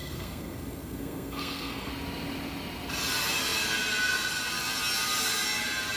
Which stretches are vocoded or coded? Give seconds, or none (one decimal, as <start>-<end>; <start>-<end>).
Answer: 0.0-1.9